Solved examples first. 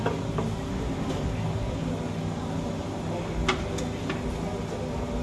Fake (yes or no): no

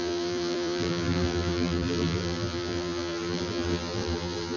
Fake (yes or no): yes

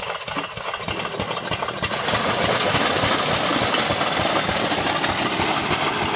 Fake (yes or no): no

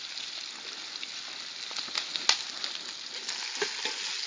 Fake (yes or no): no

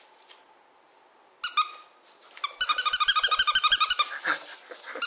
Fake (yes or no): no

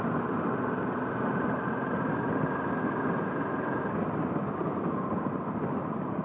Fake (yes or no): no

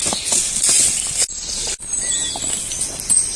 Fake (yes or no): no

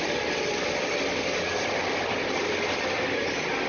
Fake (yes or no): no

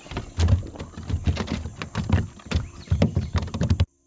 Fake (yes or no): no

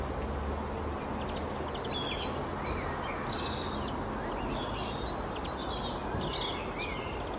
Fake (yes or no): no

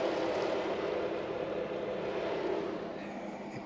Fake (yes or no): no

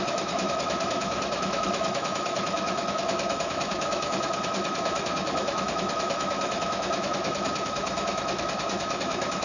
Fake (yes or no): yes